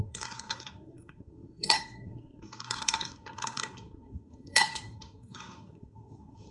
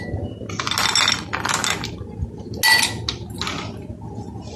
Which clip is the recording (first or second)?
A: second